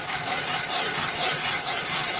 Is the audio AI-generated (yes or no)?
yes